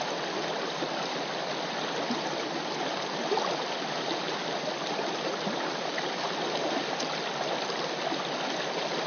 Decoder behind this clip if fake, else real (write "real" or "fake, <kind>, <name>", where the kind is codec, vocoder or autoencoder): real